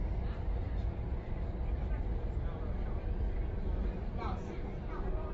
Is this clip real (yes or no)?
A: no